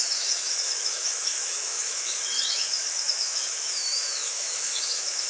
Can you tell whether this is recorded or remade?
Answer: remade